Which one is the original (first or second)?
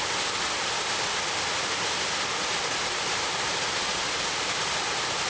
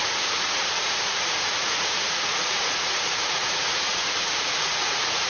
first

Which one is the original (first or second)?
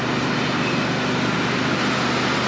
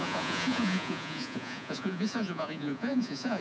first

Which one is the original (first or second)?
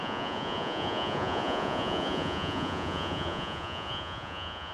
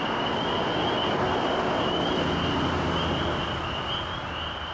second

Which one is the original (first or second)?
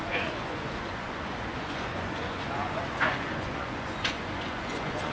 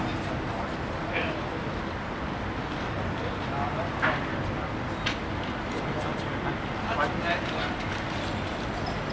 second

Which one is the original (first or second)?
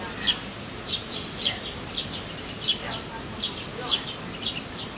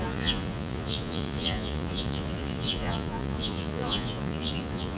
first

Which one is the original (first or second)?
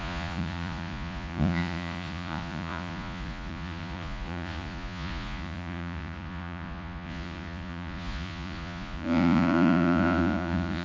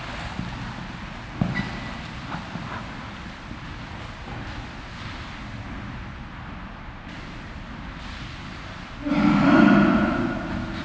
second